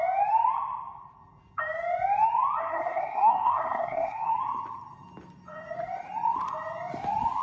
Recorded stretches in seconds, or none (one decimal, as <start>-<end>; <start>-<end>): 0.0-2.6; 4.3-7.4